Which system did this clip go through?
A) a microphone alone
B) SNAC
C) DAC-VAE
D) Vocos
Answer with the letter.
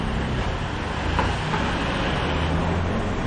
A